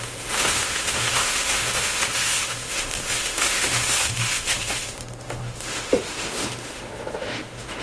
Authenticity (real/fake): fake